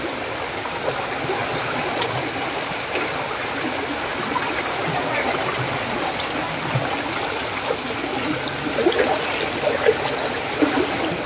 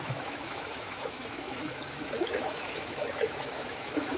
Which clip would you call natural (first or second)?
first